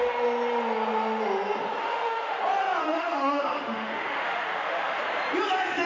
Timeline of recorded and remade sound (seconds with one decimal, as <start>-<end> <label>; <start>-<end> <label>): 0.0-1.8 recorded; 1.8-2.4 remade; 2.4-2.8 recorded; 2.8-5.0 remade; 5.0-5.9 recorded